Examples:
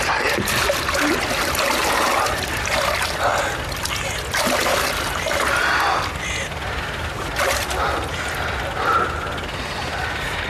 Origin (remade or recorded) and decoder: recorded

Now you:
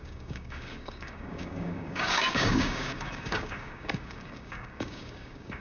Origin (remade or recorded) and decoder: remade, codec, DAC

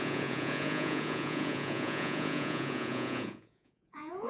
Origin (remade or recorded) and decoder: remade, vocoder, Vocos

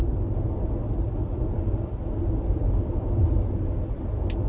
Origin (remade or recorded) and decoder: recorded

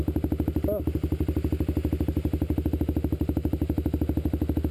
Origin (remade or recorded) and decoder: recorded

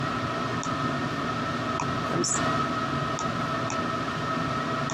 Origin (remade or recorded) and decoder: recorded